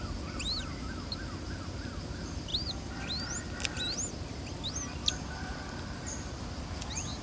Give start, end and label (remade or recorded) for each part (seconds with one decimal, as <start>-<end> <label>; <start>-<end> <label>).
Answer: 0.0-7.2 recorded